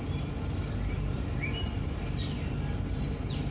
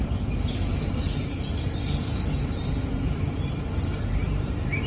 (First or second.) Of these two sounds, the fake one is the second